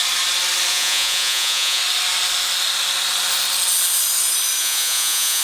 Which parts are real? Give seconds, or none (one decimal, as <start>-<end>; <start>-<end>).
0.0-0.7; 1.8-4.6